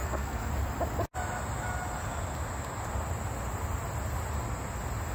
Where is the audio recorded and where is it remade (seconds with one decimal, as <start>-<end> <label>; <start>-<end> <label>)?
0.0-0.5 remade; 0.5-5.1 recorded